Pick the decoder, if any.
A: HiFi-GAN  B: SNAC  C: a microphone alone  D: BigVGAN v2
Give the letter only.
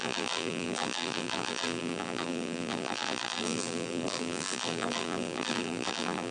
D